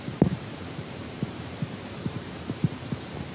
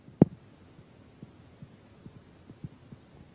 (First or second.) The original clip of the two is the second